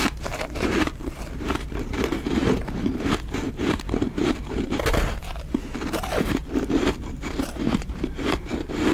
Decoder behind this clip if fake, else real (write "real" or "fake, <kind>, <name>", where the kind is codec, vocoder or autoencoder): fake, vocoder, BigVGAN v2